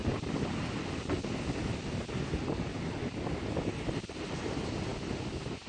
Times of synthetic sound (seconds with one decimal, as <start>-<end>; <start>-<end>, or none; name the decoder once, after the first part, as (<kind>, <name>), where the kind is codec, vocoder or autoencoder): 0.0-0.7 (vocoder, BigVGAN v2)